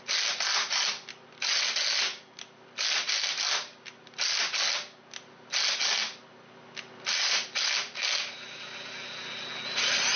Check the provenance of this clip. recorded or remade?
recorded